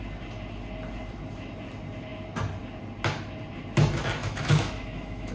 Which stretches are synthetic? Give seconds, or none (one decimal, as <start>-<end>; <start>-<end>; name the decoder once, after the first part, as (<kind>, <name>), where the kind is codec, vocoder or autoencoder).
4.2-5.3 (autoencoder, DAC-VAE)